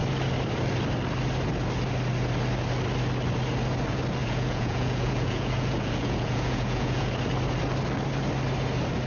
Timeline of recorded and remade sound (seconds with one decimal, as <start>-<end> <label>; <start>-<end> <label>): 0.0-4.2 recorded; 4.2-7.1 remade; 7.1-9.1 recorded